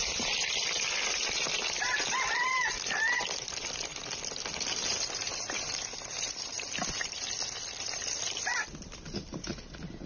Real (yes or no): no